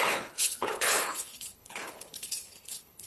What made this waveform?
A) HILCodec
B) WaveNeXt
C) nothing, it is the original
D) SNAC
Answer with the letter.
A